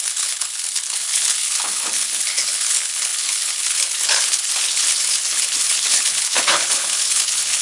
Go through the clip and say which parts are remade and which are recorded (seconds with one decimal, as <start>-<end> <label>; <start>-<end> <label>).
0.0-7.6 remade